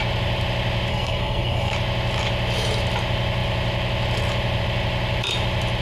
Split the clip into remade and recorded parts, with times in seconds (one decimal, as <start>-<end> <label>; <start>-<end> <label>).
0.0-0.9 recorded; 0.9-1.7 remade; 1.7-5.8 recorded